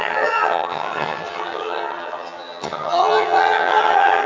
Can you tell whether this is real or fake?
fake